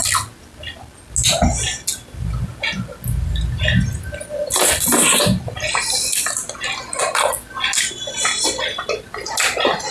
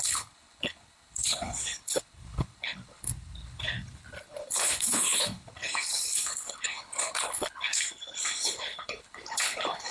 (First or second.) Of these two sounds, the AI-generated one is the second